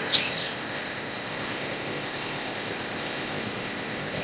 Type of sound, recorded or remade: remade